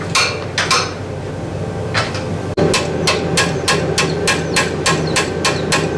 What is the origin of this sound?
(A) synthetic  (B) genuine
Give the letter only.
B